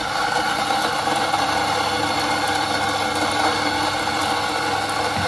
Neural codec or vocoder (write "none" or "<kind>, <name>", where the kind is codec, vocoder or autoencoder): none